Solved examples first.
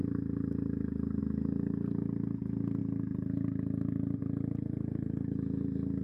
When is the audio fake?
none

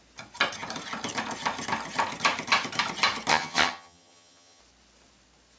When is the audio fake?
3.3-4.6 (vocoder, HiFi-GAN)

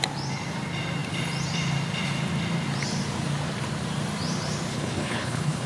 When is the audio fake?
4.7-5.7 (codec, HILCodec)

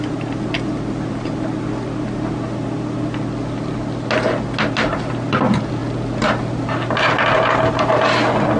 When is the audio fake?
none

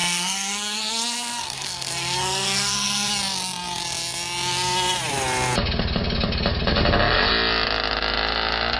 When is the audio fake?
0.0-3.1 (codec, SNAC)

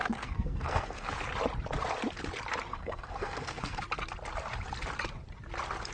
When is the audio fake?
0.0-1.1 (codec, SNAC); 2.7-3.8

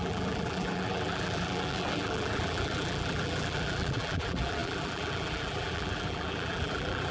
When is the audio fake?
0.0-7.1 (vocoder, BigVGAN v2)